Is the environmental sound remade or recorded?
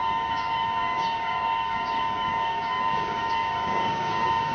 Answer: remade